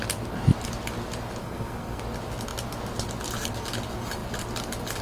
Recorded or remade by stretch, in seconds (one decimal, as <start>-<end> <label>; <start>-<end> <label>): 0.0-1.4 recorded; 1.4-2.0 remade; 2.0-5.0 recorded